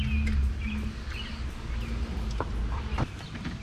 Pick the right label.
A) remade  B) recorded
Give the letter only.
B